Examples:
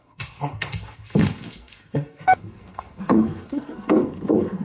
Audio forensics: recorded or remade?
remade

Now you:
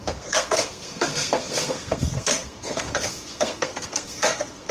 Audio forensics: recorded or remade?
remade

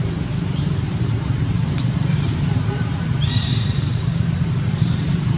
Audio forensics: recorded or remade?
remade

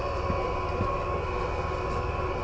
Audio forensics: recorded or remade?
recorded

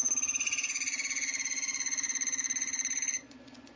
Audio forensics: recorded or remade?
remade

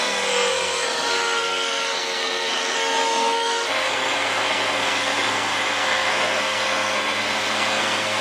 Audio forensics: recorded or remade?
remade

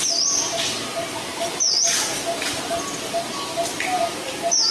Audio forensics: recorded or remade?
recorded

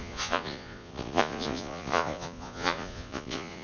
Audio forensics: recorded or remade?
remade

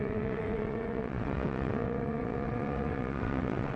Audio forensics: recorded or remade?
remade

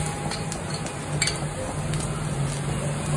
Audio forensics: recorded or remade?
recorded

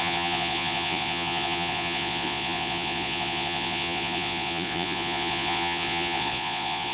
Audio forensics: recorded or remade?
remade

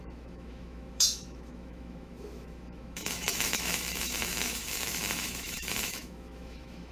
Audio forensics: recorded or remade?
remade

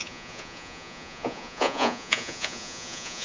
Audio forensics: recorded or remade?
remade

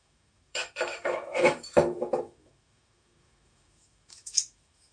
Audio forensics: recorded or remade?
remade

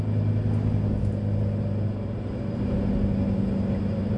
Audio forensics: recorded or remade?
recorded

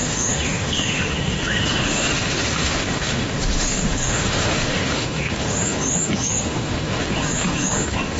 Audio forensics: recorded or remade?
remade